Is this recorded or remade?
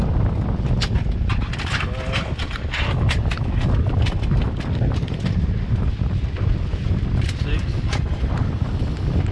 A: recorded